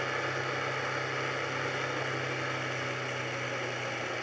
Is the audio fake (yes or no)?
no